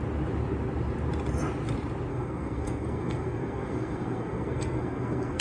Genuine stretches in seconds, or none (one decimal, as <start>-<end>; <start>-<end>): 0.0-2.1